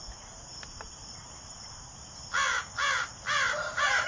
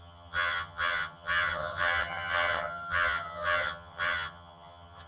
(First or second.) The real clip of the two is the first